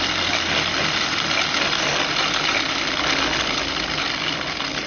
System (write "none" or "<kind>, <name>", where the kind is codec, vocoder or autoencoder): vocoder, BigVGAN v2